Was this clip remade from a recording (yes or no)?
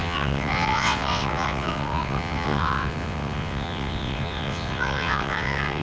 yes